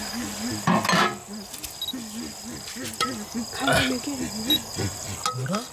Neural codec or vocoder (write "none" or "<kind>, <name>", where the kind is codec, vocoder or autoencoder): none